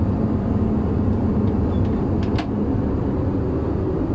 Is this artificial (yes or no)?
no